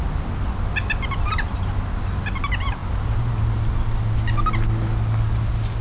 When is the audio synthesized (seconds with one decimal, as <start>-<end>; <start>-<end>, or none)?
none